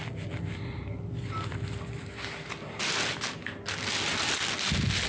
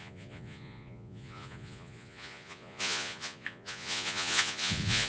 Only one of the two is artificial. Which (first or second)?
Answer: second